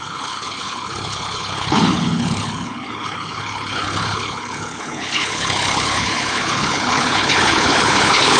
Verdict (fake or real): fake